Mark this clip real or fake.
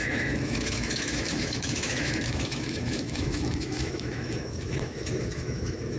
fake